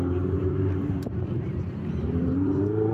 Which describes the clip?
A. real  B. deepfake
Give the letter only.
B